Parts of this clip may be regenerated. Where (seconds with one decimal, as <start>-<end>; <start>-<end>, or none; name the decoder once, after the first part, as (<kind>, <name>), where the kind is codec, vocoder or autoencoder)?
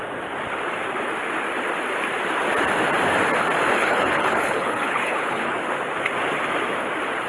3.8-5.6 (codec, HILCodec)